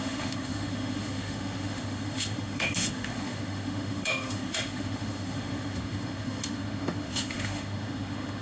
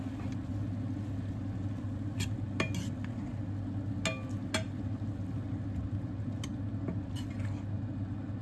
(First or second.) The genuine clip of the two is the second